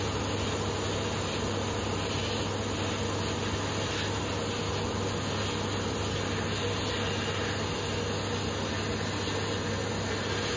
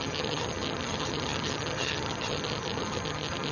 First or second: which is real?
first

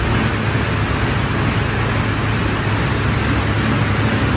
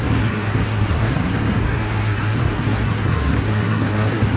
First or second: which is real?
first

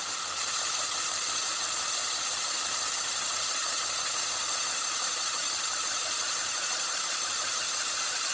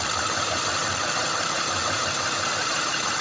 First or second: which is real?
second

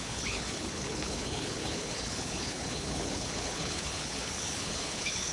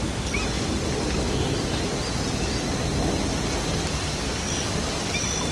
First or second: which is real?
second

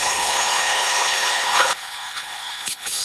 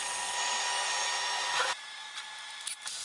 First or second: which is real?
second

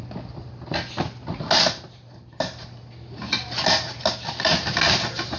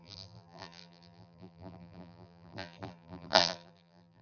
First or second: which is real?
first